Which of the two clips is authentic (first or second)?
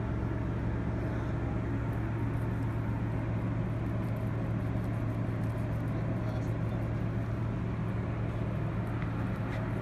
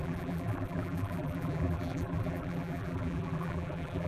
first